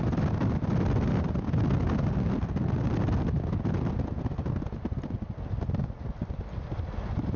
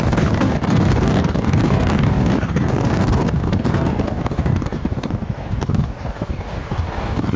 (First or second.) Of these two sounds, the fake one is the second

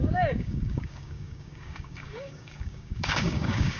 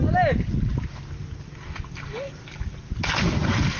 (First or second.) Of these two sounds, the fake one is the first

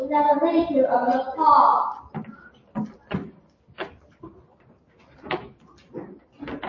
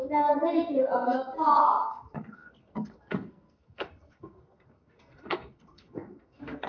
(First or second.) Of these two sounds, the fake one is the second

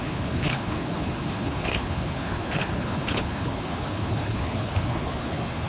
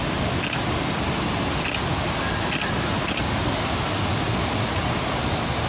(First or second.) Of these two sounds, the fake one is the first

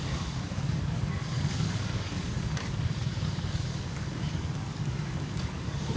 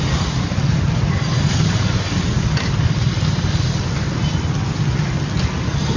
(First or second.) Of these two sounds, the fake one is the first